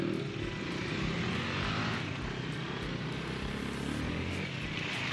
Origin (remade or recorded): recorded